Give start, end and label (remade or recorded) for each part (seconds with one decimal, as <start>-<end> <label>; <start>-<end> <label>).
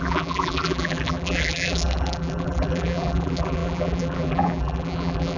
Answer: 0.0-5.4 remade